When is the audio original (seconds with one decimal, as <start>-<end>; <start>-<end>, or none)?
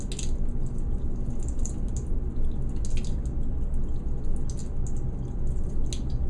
0.0-6.3